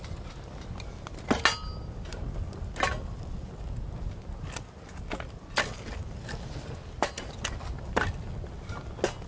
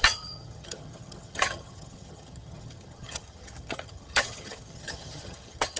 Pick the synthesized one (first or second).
second